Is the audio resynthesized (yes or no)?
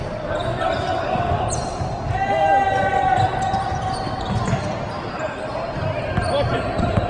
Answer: no